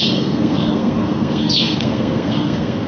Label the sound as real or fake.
fake